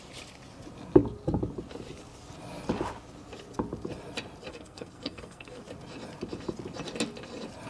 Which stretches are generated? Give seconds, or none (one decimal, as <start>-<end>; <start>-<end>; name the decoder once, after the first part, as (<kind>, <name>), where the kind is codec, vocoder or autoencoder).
4.5-5.6 (codec, SNAC)